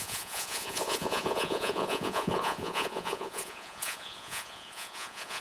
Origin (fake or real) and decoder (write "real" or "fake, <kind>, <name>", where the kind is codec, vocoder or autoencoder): fake, vocoder, Vocos